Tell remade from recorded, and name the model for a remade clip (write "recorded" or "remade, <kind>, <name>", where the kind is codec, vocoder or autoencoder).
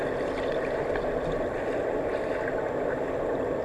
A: recorded